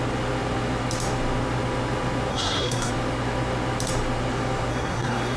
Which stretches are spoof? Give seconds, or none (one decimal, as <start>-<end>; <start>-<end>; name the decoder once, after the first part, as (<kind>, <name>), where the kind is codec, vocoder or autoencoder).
2.3-2.9 (codec, SNAC); 4.7-5.4